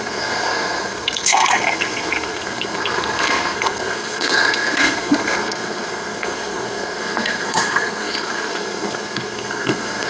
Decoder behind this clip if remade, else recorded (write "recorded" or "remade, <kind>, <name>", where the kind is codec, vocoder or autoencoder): remade, codec, SNAC